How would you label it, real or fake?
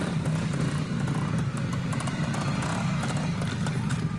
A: real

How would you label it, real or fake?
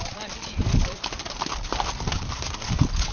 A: real